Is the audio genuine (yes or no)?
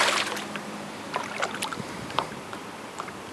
no